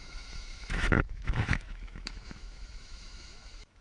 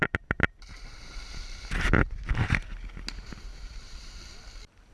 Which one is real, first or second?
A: second